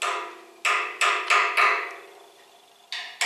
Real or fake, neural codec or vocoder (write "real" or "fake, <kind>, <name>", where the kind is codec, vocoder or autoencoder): real